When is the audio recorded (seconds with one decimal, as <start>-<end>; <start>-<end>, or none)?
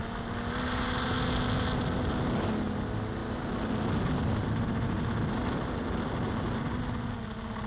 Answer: 0.0-7.7